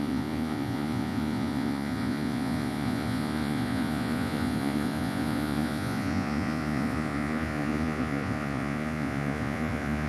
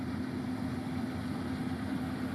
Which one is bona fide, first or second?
second